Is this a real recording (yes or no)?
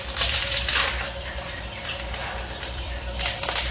no